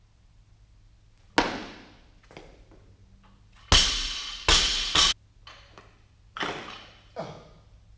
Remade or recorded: recorded